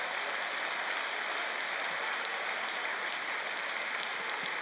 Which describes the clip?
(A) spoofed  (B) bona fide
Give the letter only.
B